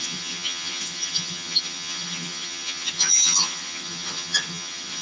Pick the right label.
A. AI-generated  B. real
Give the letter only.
A